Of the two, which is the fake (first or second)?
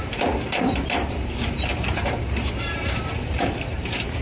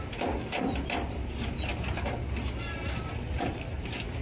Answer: first